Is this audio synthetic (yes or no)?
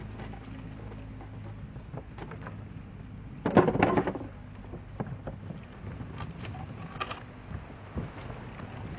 no